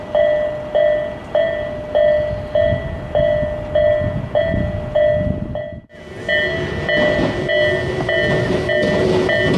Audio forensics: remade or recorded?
recorded